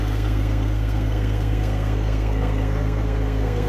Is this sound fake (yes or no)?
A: yes